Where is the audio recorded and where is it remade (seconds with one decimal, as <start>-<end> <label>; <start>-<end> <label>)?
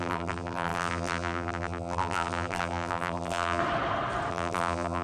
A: 0.0-3.6 remade; 3.6-4.3 recorded; 4.3-5.0 remade